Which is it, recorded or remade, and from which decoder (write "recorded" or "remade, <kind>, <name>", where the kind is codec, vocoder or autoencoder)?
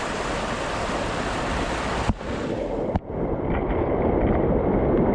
recorded